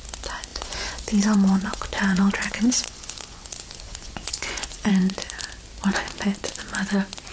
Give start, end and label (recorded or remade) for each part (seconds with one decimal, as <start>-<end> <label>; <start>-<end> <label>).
0.0-0.5 recorded; 0.5-4.9 remade; 4.9-7.3 recorded